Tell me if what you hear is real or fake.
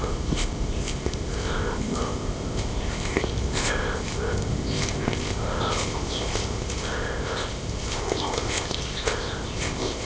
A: fake